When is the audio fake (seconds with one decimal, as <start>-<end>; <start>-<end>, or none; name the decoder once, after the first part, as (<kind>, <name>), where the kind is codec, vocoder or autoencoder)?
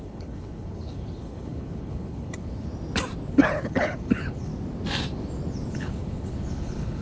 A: 0.0-2.7 (codec, HILCodec); 3.3-4.5; 5.7-7.0